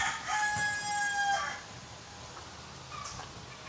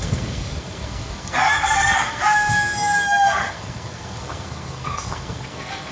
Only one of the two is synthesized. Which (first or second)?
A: second